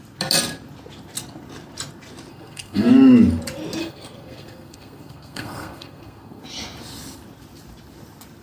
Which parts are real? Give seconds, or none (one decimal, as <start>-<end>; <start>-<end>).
0.0-2.3; 2.9-3.8; 6.4-8.4